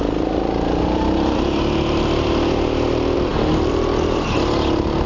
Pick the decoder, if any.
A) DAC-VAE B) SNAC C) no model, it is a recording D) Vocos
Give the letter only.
C